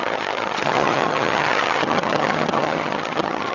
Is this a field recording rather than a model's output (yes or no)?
no